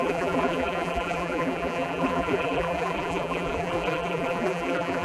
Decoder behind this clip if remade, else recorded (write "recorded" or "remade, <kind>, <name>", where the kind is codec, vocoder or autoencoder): remade, vocoder, BigVGAN v2